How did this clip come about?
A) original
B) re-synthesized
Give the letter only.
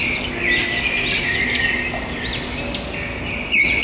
A